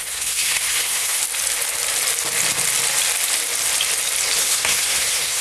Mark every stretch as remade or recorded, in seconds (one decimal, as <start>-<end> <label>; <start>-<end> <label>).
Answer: 0.0-1.2 remade; 1.2-4.4 recorded; 4.4-5.4 remade